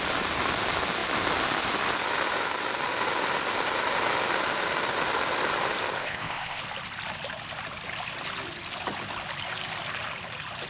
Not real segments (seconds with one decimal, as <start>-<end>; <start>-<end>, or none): 6.0-6.6